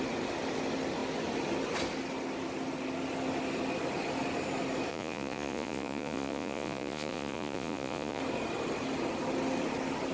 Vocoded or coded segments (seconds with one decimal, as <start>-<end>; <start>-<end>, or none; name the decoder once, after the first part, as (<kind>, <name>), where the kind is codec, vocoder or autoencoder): 4.9-8.2 (vocoder, Vocos)